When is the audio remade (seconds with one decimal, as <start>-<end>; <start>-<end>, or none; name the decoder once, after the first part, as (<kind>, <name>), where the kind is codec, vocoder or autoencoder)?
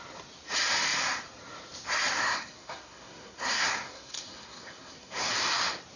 2.2-5.3 (codec, SNAC)